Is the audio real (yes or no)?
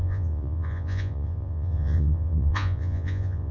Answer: no